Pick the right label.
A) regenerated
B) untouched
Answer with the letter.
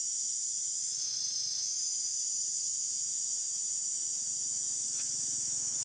A